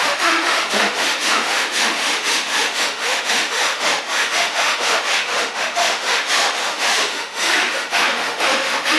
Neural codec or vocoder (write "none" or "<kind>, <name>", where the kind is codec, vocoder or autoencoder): autoencoder, DAC-VAE